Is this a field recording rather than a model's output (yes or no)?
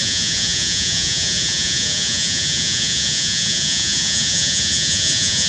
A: no